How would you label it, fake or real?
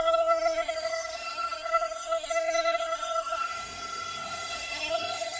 fake